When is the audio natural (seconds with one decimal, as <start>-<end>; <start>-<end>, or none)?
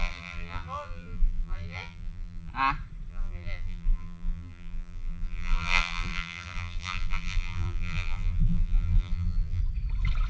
2.5-3.1; 9.6-10.3